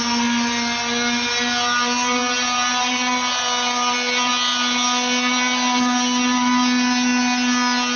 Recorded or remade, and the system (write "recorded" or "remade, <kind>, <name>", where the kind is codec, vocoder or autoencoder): recorded